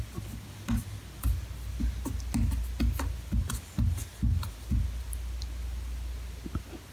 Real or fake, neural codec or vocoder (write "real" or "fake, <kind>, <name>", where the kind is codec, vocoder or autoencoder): real